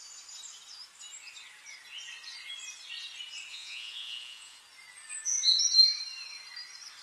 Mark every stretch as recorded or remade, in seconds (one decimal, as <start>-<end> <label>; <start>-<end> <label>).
0.0-3.5 recorded; 3.5-4.6 remade; 4.6-7.0 recorded